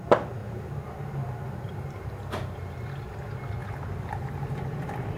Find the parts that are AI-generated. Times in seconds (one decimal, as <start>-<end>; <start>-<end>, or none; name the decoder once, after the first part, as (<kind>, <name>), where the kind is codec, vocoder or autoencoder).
0.4-2.1 (vocoder, BigVGAN v2); 3.6-5.2